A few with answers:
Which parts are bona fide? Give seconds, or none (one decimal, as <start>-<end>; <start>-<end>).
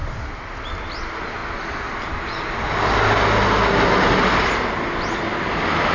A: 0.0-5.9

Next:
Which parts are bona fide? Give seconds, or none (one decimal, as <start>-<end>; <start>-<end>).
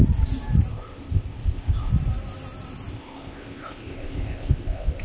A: 0.0-0.7; 1.9-2.9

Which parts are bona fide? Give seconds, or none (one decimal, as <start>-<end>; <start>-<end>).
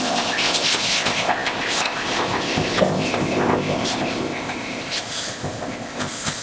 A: none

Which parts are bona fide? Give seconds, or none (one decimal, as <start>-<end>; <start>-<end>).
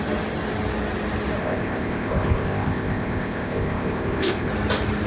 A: 0.0-1.4; 4.5-5.1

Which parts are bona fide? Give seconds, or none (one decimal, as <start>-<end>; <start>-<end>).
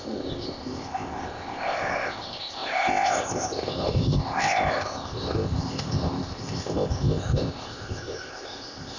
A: none